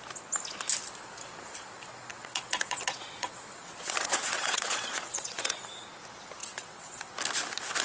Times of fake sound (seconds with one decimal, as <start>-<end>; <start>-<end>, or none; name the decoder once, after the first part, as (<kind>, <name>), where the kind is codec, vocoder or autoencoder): 2.1-5.6 (vocoder, WaveNeXt); 6.4-7.1